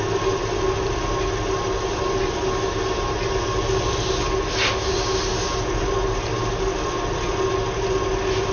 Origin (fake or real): real